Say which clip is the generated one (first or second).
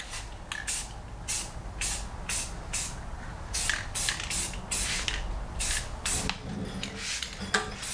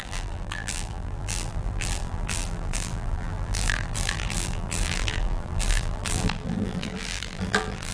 second